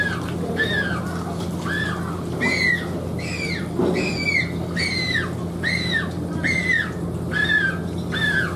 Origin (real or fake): real